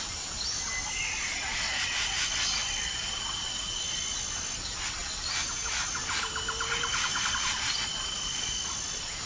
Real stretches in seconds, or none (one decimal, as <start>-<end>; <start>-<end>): 0.0-5.0; 5.7-7.1; 7.7-9.3